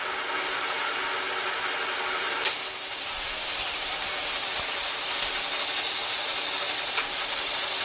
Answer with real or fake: real